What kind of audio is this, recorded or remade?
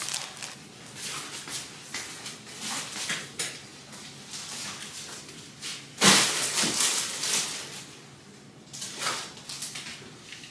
recorded